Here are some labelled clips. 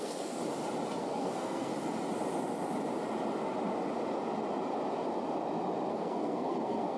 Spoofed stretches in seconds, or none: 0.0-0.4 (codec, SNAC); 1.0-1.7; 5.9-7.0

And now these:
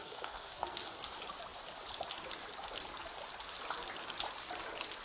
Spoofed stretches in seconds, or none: 0.0-0.8 (codec, SNAC)

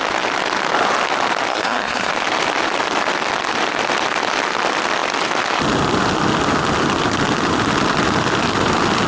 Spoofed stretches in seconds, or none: 1.5-2.1 (codec, SNAC)

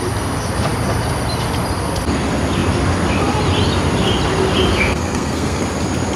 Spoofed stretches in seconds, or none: 4.7-5.6 (codec, SNAC)

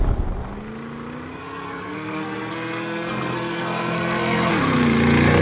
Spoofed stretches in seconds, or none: 1.3-4.5 (codec, SNAC)

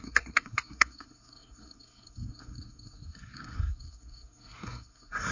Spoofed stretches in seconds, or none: 0.0-5.3 (codec, SNAC)